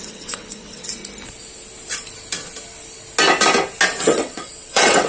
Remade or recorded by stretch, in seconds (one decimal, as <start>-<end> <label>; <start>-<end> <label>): 0.0-0.9 remade; 0.9-4.0 recorded; 4.0-5.1 remade